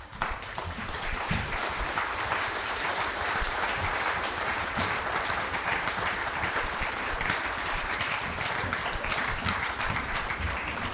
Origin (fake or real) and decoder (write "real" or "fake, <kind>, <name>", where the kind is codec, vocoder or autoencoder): fake, vocoder, BigVGAN v2